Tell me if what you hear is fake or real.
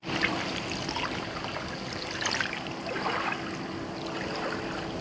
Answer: real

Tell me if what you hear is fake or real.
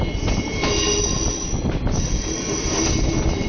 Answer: real